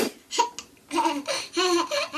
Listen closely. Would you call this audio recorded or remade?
recorded